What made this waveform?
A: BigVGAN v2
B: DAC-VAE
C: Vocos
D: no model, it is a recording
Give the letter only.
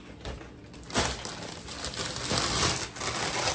D